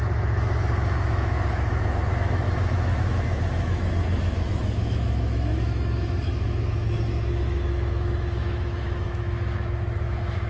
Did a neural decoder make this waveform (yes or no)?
yes